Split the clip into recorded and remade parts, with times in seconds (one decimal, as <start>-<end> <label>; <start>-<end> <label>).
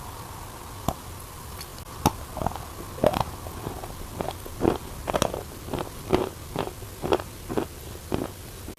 0.0-8.8 recorded